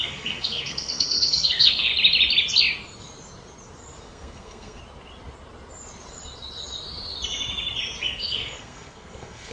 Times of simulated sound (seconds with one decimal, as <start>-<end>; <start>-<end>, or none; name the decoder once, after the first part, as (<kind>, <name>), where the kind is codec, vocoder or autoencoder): 0.0-1.9 (codec, SNAC); 4.0-4.8; 8.0-9.5